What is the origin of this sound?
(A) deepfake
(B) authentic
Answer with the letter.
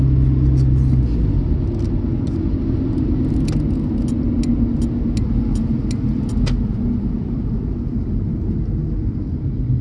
B